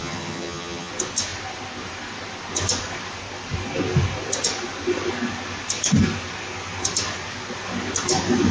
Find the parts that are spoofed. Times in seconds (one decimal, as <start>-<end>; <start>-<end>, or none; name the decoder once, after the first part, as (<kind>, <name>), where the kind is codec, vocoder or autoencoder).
0.0-0.9 (vocoder, HiFi-GAN)